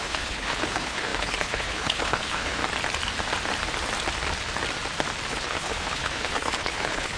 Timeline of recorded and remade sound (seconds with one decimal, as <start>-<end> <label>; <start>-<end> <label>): 0.0-2.6 remade; 2.6-5.3 recorded; 5.3-7.2 remade